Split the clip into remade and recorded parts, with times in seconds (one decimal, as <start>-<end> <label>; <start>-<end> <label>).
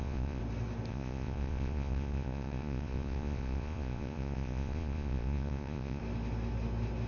0.0-0.4 remade; 0.4-0.9 recorded; 0.9-6.0 remade; 6.0-7.1 recorded